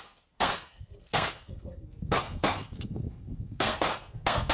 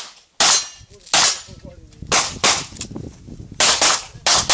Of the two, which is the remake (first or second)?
first